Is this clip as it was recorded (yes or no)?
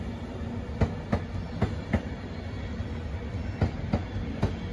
yes